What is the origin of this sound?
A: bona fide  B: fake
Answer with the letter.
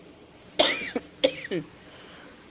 A